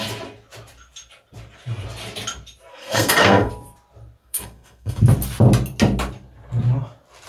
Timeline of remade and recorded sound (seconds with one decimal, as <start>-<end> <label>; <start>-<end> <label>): 0.0-2.7 recorded; 2.7-3.5 remade; 3.5-4.2 recorded; 4.2-5.0 remade; 5.0-7.3 recorded